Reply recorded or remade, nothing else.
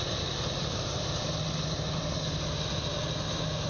recorded